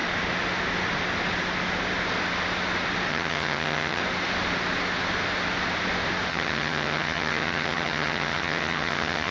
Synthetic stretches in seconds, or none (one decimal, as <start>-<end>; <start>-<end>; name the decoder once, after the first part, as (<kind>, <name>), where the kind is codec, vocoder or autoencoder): 3.1-4.0 (vocoder, HiFi-GAN); 6.3-9.3